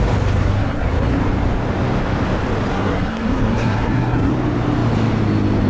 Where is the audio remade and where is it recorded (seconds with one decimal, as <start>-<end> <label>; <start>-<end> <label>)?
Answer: 0.0-0.4 recorded; 0.4-1.2 remade; 1.2-2.7 recorded; 2.7-4.3 remade; 4.3-5.7 recorded